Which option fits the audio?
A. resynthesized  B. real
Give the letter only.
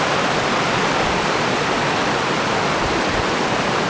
B